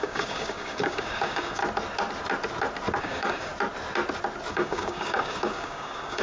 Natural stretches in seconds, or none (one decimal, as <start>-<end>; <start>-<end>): 1.6-3.0; 3.5-4.5